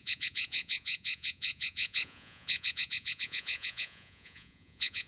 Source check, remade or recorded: remade